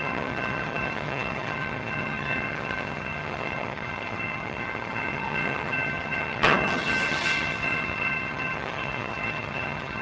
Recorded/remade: remade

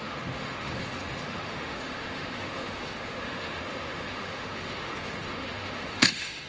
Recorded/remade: remade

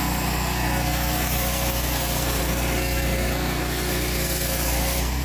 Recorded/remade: remade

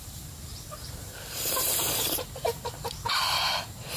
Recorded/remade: remade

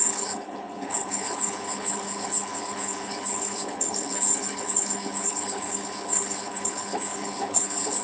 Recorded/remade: remade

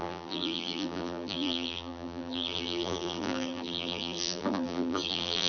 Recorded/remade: remade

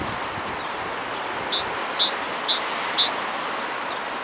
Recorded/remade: recorded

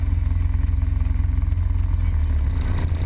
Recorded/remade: recorded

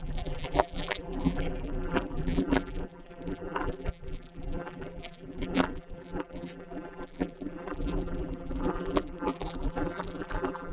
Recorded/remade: remade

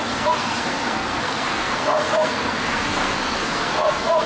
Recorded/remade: remade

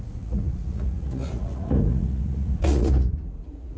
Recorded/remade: remade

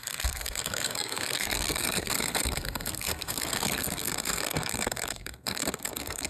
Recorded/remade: remade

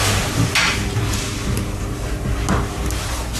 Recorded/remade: recorded